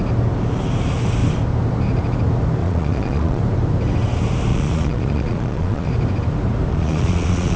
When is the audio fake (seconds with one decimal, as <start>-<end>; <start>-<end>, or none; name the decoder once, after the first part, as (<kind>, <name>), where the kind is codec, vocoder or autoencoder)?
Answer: 2.6-3.4 (vocoder, Vocos); 4.5-5.9; 6.7-7.6

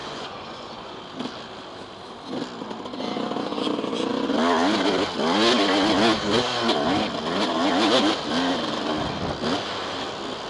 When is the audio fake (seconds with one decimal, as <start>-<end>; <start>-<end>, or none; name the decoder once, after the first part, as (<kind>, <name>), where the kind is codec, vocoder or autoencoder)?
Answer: 0.0-1.0 (vocoder, Vocos)

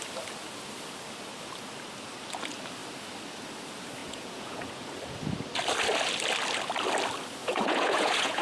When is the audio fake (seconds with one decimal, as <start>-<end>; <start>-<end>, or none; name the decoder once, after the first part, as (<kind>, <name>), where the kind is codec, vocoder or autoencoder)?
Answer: 4.0-4.9 (vocoder, Vocos); 7.4-8.4

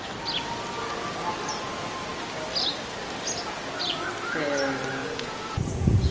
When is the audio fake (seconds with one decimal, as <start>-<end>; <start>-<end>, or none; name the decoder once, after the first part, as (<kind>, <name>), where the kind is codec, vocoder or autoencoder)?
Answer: 5.0-6.1 (vocoder, Vocos)

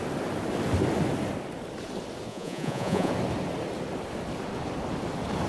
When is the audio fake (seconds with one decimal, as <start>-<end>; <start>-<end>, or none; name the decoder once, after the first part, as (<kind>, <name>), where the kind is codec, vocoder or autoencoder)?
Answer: 2.3-3.1 (vocoder, Vocos)

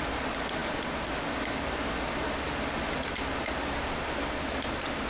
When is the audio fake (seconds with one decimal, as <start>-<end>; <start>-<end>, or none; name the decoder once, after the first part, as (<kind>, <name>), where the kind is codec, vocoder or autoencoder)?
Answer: none

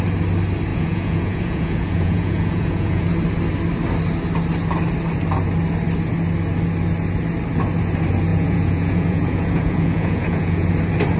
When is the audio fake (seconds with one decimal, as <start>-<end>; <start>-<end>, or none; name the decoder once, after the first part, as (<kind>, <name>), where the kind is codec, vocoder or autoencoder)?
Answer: 0.7-3.1 (vocoder, Vocos); 8.3-10.7